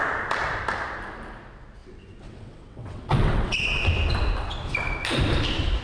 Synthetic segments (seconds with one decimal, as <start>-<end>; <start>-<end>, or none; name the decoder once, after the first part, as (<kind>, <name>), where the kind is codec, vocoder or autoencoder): 1.8-3.6 (vocoder, WaveNeXt)

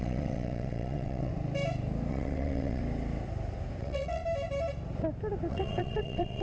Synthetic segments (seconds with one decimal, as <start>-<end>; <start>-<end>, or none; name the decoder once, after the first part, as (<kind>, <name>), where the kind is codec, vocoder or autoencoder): 0.0-1.3 (vocoder, WaveNeXt); 2.1-2.8; 3.8-4.2; 5.5-6.4

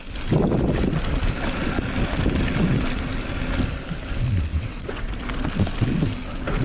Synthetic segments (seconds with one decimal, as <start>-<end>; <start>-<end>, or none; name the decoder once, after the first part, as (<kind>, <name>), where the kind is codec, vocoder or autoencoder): 4.5-5.1 (vocoder, WaveNeXt)

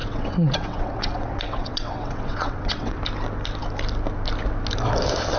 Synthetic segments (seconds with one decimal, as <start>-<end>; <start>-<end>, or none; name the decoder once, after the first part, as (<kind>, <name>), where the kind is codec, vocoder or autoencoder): 0.0-3.0 (vocoder, WaveNeXt)

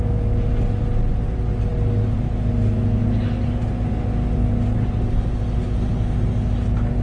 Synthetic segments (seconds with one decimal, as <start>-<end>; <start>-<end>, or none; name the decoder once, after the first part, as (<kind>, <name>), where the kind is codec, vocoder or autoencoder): none

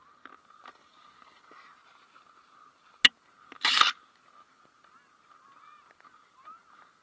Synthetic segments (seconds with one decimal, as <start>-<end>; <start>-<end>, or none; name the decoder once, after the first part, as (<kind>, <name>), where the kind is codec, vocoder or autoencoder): none

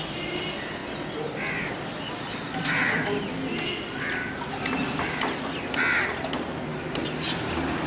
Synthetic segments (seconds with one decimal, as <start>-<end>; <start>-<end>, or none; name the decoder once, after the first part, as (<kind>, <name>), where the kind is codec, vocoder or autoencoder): none